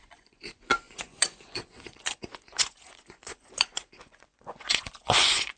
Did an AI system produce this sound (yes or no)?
yes